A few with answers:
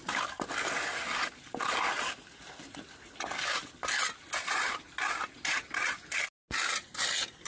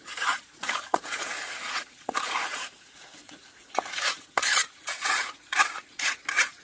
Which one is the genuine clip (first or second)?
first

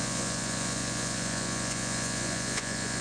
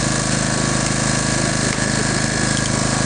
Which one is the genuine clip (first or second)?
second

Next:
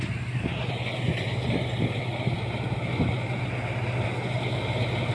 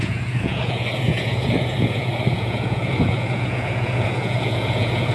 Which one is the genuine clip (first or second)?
first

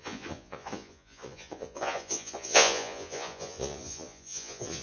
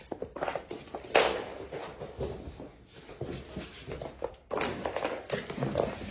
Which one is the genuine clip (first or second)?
second